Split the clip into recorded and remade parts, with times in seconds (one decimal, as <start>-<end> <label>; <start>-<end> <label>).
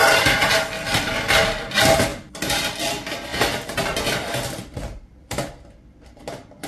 0.0-1.0 remade; 1.0-3.3 recorded; 3.3-5.5 remade; 5.5-6.7 recorded